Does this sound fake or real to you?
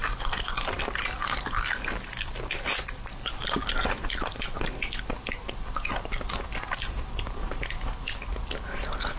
real